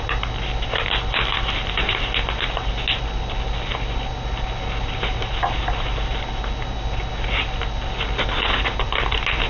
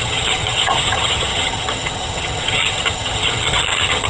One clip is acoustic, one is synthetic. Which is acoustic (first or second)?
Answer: first